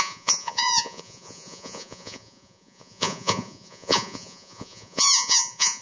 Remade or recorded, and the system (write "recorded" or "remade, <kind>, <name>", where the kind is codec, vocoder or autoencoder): remade, vocoder, Vocos